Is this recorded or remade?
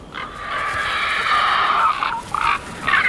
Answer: recorded